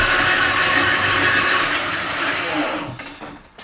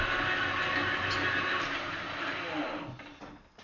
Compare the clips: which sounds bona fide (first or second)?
second